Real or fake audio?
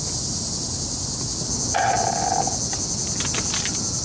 real